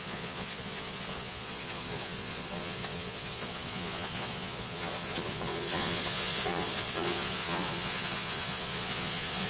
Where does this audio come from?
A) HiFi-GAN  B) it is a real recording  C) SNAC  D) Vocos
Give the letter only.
D